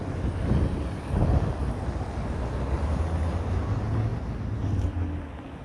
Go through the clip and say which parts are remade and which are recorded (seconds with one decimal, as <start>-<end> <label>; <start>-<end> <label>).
0.0-5.6 recorded